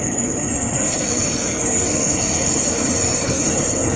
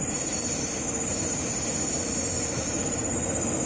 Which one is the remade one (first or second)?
first